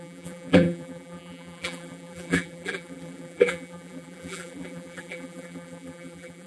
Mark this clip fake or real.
fake